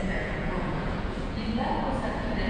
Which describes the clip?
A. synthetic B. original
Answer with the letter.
A